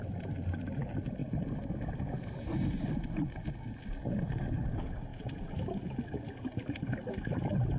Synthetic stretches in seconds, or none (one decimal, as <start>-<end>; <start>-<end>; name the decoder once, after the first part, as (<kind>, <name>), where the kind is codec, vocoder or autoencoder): none